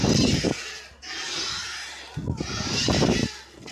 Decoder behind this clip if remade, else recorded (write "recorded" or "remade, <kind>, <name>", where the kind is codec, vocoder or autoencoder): recorded